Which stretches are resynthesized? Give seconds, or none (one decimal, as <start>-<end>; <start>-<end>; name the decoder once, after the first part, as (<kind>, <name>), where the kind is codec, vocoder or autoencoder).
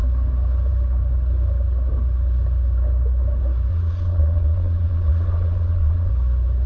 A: 3.7-6.1 (vocoder, Vocos)